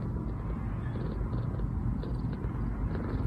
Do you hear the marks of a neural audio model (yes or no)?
no